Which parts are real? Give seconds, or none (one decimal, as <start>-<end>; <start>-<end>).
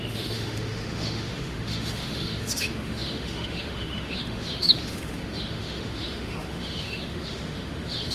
none